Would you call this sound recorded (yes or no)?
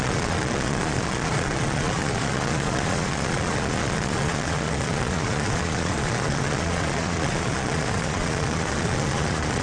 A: no